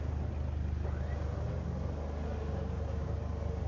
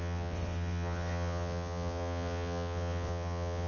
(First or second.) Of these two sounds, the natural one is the first